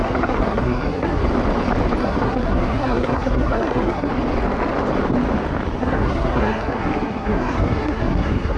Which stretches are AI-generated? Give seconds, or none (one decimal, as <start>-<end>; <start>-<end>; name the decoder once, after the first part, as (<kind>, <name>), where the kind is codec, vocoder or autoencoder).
0.0-1.2 (codec, SNAC); 2.0-4.1; 5.8-8.6

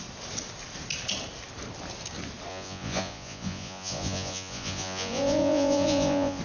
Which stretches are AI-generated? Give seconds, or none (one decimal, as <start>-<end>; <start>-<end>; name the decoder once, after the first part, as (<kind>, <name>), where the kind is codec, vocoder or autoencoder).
2.5-6.4 (vocoder, Vocos)

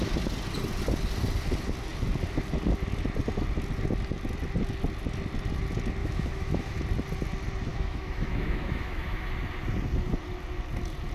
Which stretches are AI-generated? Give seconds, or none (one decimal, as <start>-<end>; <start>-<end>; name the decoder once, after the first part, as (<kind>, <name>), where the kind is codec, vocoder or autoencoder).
6.0-6.8 (autoencoder, DAC-VAE); 7.7-9.3

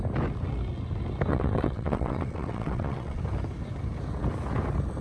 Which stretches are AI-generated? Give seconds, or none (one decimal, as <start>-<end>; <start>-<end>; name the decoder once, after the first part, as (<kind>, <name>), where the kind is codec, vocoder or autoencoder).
1.3-3.2 (vocoder, WaveNeXt)

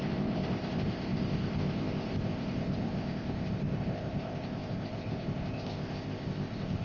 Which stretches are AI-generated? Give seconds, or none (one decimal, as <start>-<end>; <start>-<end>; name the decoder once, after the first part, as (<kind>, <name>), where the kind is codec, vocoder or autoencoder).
0.0-6.8 (codec, ZipCodec)

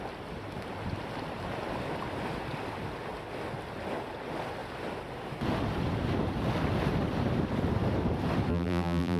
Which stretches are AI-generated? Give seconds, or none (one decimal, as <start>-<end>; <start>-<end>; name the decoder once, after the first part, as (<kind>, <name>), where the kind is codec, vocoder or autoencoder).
8.5-9.2 (vocoder, BigVGAN v2)

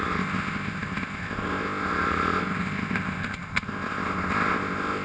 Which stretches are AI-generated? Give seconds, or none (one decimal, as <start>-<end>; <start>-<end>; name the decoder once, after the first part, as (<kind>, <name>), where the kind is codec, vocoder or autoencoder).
0.0-5.0 (codec, ZipCodec)